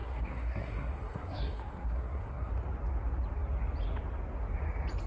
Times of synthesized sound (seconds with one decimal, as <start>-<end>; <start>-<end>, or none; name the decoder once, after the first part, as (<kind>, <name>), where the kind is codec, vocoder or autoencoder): 0.0-2.5 (codec, SNAC)